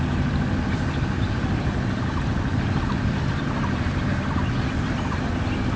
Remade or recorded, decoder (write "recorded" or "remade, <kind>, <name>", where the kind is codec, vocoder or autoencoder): recorded